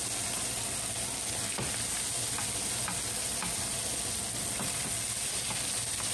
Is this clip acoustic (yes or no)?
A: yes